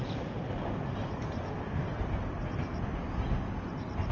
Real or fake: real